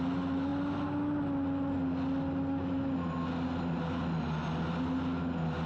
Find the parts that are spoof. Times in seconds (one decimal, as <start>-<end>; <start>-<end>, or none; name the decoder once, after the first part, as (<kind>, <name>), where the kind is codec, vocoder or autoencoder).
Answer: none